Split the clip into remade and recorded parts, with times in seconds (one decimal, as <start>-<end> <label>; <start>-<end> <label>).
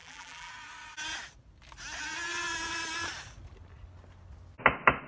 0.0-0.5 remade; 0.5-5.1 recorded